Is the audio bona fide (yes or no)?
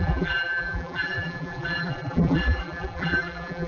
no